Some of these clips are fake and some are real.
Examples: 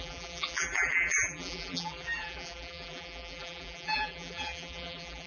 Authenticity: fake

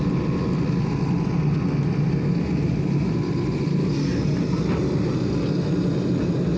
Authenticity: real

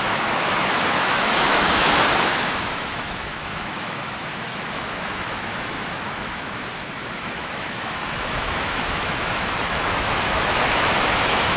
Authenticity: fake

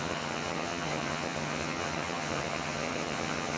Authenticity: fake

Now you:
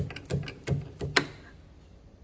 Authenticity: real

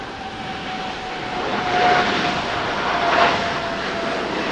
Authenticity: real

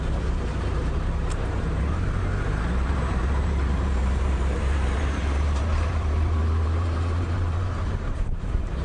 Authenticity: fake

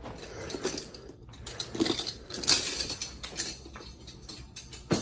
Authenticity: real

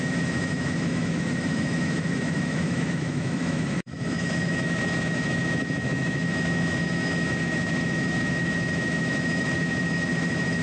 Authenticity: fake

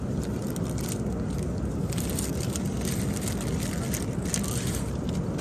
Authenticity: real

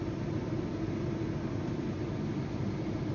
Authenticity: real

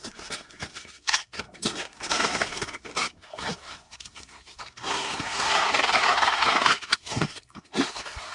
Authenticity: fake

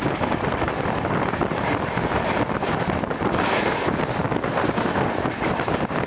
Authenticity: real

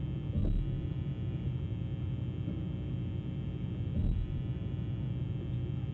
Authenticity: real